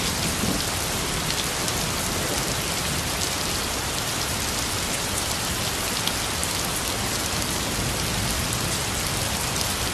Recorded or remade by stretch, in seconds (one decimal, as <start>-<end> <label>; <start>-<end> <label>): 0.0-9.9 recorded